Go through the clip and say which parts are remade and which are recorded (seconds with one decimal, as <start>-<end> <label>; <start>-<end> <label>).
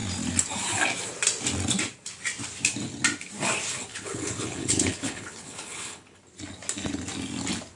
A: 0.0-3.9 recorded; 3.9-6.2 remade; 6.2-7.8 recorded